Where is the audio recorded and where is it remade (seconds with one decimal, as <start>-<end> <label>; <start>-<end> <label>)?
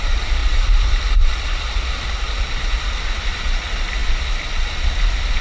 0.0-0.4 recorded; 0.4-3.4 remade; 3.4-5.4 recorded